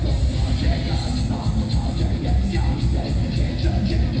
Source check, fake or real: real